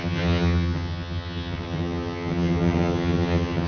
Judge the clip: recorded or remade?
remade